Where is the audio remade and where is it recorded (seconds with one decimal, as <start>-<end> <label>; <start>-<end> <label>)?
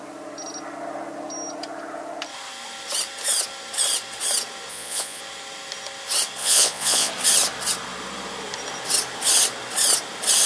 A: 0.0-4.7 recorded; 4.7-5.2 remade; 5.2-6.4 recorded; 6.4-7.1 remade; 7.1-10.5 recorded